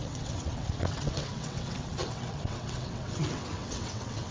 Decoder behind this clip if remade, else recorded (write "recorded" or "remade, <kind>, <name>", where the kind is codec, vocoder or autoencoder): remade, vocoder, WaveNeXt